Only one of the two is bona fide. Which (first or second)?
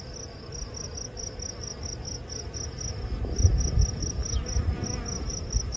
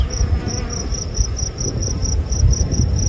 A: first